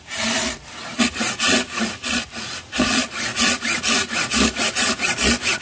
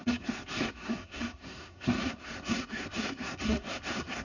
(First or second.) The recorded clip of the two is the first